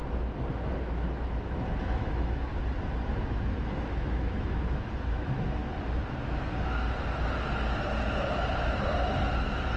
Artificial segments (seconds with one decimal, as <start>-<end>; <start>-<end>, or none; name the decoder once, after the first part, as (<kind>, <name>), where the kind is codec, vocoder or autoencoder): 0.7-2.5 (autoencoder, DAC-VAE); 3.1-5.6; 9.3-9.8